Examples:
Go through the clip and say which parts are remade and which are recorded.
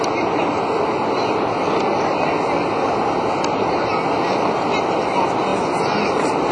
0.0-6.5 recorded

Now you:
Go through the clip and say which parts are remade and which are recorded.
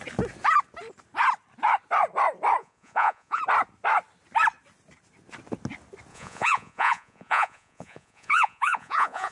0.0-2.6 recorded; 2.6-3.4 remade; 3.4-6.1 recorded; 6.1-9.3 remade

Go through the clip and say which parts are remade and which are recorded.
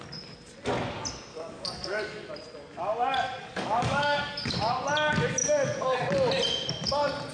0.0-1.3 recorded; 1.3-2.3 remade; 2.3-3.4 recorded; 3.4-4.7 remade; 4.7-5.4 recorded; 5.4-6.0 remade; 6.0-7.3 recorded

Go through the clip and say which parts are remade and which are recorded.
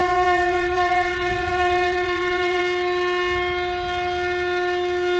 0.0-2.6 remade; 2.6-5.2 recorded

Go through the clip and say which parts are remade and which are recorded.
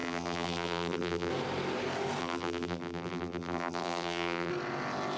0.0-1.3 remade; 1.3-2.2 recorded; 2.2-4.5 remade; 4.5-5.2 recorded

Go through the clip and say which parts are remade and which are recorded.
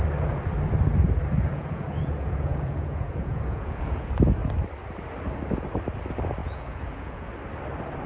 0.0-1.5 recorded; 1.5-4.1 remade; 4.1-6.4 recorded; 6.4-7.3 remade; 7.3-8.1 recorded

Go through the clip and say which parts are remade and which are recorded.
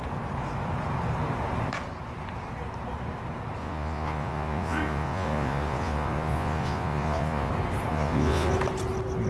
0.0-3.6 recorded; 3.6-7.5 remade; 7.5-7.9 recorded; 7.9-8.5 remade; 8.5-9.3 recorded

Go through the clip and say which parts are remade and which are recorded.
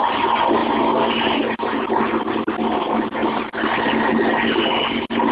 0.0-5.3 recorded